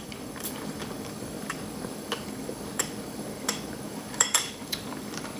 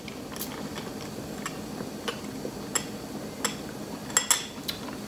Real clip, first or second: second